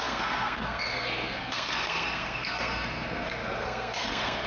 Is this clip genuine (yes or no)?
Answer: no